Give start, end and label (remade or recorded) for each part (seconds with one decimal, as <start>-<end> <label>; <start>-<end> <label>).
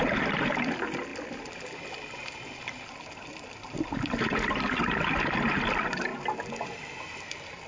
0.0-7.7 recorded